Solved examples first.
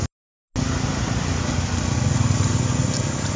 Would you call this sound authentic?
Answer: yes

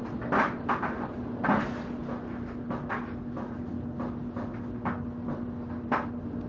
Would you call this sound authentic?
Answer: yes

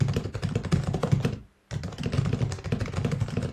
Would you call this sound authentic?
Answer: yes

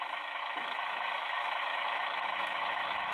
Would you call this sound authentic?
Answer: no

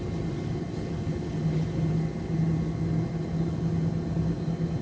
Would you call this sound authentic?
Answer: yes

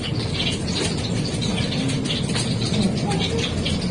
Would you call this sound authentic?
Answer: yes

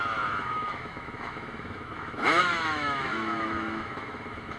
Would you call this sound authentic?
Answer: no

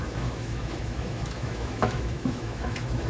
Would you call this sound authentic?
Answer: no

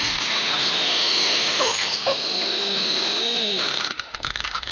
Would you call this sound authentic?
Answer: no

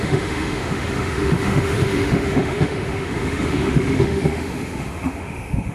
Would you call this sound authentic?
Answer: no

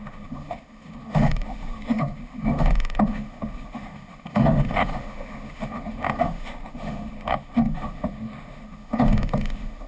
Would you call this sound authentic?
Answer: no